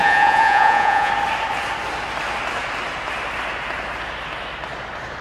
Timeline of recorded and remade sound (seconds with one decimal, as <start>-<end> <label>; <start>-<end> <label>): 0.0-1.1 remade; 1.1-5.2 recorded